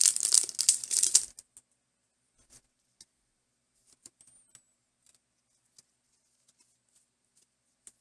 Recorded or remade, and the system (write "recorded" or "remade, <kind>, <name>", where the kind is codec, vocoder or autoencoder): recorded